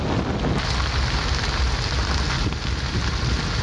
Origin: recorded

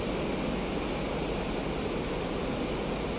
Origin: recorded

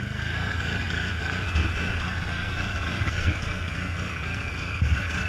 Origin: remade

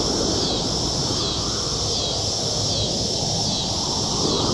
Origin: recorded